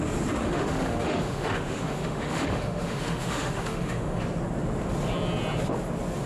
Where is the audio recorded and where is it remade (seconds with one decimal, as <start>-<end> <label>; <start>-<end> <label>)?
0.0-0.4 recorded; 0.4-4.2 remade; 4.2-6.3 recorded